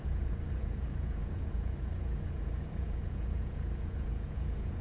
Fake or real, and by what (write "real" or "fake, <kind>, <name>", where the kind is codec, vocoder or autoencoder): fake, vocoder, Vocos